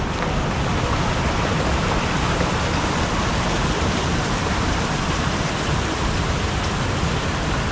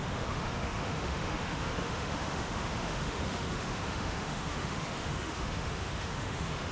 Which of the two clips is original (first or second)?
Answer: first